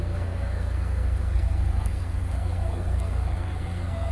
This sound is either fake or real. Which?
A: fake